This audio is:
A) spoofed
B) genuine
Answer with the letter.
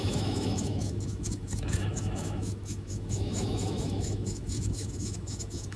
A